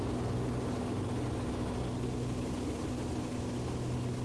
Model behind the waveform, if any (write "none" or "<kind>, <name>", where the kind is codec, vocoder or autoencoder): none